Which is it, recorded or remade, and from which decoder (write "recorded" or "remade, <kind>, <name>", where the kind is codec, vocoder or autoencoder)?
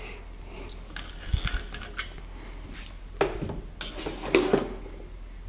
recorded